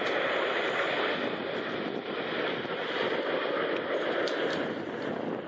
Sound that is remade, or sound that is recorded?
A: recorded